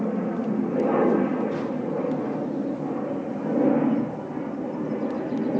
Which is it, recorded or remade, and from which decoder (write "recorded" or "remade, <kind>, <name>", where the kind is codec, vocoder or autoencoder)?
recorded